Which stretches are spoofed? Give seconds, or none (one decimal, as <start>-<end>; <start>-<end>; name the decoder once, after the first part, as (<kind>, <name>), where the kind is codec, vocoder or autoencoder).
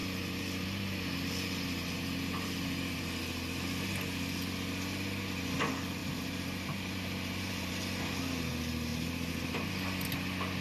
0.0-3.0 (vocoder, BigVGAN v2); 6.0-7.7; 8.9-9.7